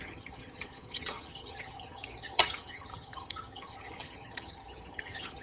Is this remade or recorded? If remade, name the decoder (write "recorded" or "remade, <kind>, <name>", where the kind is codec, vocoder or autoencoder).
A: remade, vocoder, HiFi-GAN